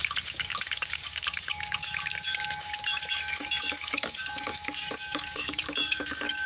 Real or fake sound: fake